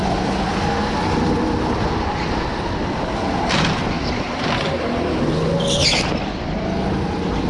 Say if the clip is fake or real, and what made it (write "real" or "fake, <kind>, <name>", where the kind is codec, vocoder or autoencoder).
real